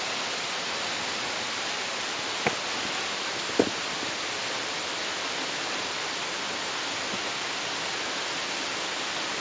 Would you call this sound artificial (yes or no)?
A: no